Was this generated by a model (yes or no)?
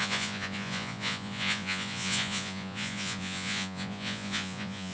yes